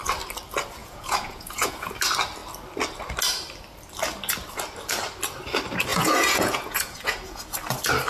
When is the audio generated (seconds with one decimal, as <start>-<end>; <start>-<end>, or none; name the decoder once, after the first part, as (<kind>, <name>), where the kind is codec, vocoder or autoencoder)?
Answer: 0.8-1.9 (vocoder, Vocos); 5.9-7.4